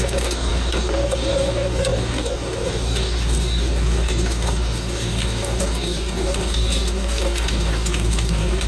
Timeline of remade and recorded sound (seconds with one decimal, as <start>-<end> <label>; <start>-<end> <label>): 0.0-8.7 remade